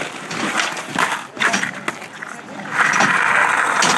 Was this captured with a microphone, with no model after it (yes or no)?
yes